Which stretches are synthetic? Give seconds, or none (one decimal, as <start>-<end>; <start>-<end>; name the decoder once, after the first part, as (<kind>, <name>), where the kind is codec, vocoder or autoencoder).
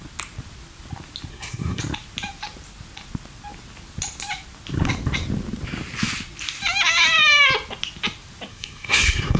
1.3-1.8 (codec, SNAC); 8.5-9.4